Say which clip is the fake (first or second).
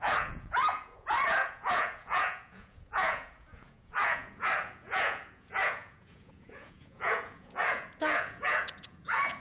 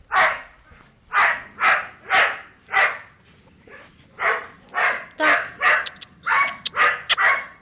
first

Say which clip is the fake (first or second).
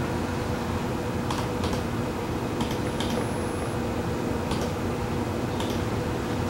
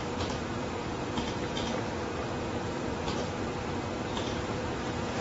second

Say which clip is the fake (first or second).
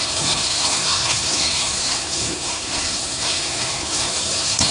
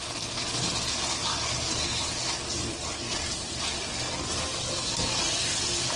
first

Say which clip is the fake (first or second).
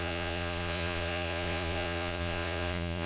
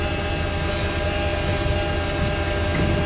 first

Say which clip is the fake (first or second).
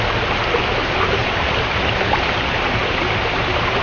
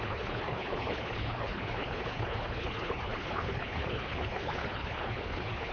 second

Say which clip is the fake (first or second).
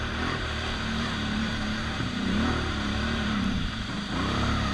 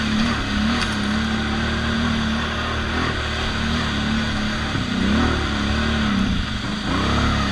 first